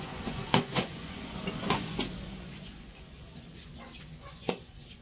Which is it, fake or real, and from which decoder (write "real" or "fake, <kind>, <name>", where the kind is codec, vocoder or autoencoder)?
fake, vocoder, Vocos